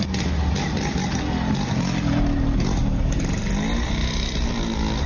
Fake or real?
real